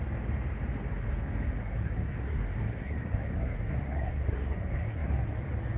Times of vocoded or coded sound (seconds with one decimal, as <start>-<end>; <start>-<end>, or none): 1.6-5.1